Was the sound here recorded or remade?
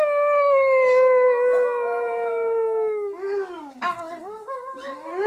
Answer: remade